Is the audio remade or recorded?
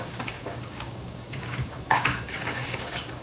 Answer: remade